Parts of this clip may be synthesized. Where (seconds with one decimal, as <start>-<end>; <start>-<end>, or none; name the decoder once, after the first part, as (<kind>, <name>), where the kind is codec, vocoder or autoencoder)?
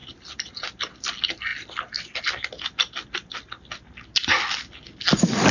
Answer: none